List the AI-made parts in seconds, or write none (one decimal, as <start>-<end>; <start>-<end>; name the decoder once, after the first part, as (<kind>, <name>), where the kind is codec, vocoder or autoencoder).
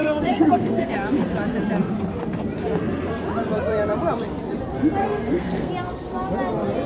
0.0-0.9 (codec, SNAC); 5.0-5.7